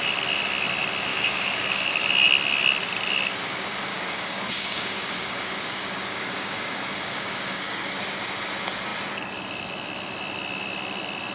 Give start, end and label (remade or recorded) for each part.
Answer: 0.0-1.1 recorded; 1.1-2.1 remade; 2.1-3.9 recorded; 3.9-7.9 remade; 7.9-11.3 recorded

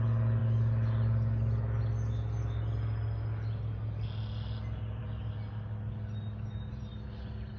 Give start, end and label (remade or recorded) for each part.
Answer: 0.0-7.6 recorded